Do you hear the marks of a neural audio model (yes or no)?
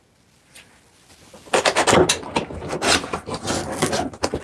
no